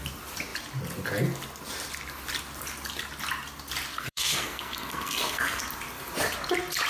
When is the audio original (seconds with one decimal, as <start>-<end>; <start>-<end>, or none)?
0.0-3.9; 5.6-6.9